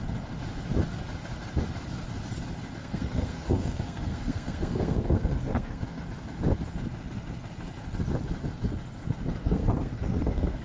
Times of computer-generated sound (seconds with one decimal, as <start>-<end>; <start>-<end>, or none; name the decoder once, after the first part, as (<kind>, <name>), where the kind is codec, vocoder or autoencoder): 2.8-6.0 (codec, SNAC); 9.4-10.6